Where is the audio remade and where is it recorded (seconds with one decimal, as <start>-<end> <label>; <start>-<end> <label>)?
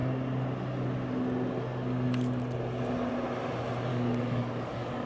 0.0-3.9 recorded; 3.9-5.1 remade